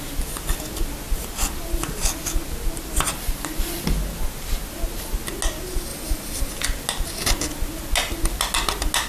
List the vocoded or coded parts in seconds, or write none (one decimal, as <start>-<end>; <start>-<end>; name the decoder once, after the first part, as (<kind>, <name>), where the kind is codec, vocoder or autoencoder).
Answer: 5.9-6.5 (vocoder, BigVGAN v2)